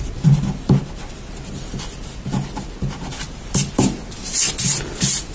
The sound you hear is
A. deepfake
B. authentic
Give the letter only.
B